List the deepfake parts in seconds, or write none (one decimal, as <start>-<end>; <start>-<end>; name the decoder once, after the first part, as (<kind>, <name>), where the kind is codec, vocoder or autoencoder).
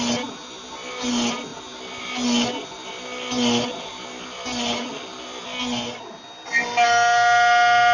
none